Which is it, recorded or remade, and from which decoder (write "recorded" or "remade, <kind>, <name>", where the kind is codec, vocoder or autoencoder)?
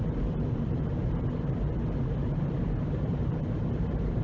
remade, vocoder, BigVGAN v2